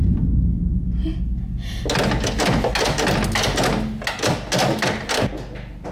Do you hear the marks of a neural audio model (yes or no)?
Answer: no